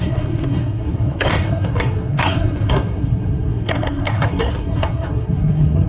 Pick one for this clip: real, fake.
fake